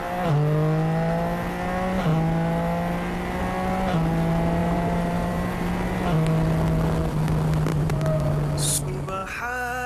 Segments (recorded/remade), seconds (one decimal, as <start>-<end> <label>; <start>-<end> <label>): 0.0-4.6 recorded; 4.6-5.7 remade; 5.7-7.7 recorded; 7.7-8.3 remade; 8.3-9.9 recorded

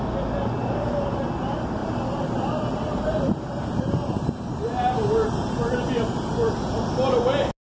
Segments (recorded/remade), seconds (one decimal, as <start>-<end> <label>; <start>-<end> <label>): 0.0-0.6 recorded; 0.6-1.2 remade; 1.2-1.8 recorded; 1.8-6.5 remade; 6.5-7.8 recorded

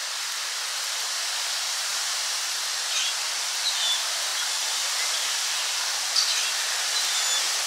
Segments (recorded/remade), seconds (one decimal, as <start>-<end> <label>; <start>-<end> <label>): 0.0-1.9 remade; 1.9-2.8 recorded; 2.8-4.3 remade; 4.3-6.5 recorded; 6.5-7.7 remade

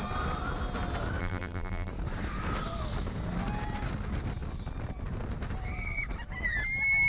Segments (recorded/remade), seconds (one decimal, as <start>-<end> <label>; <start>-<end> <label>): 0.0-1.2 recorded; 1.2-1.9 remade; 1.9-7.1 recorded